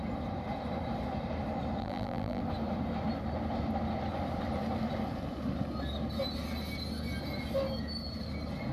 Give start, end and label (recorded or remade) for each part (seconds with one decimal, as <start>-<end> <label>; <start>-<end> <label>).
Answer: 0.0-1.8 recorded; 1.8-2.4 remade; 2.4-8.7 recorded